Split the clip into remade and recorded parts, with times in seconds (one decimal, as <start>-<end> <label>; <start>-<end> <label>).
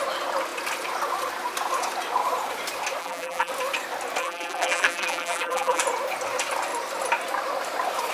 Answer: 0.0-3.0 recorded; 3.0-3.5 remade; 3.5-4.2 recorded; 4.2-5.8 remade; 5.8-8.1 recorded